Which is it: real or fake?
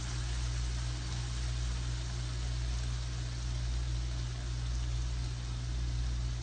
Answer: real